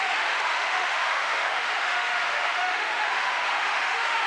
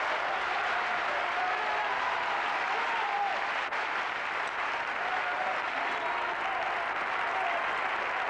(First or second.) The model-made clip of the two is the first